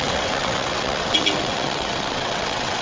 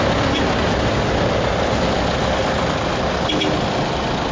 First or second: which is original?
second